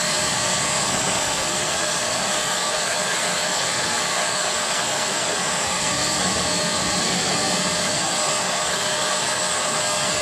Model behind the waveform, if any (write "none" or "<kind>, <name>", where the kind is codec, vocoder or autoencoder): codec, SNAC